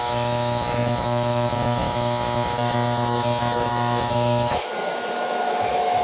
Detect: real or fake fake